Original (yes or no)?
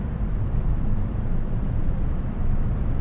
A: yes